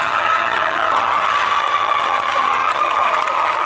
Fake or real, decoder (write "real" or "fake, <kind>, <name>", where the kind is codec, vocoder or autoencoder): fake, vocoder, HiFi-GAN